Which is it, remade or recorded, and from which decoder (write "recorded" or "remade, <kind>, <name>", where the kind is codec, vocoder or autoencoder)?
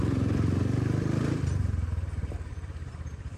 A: remade, vocoder, BigVGAN v2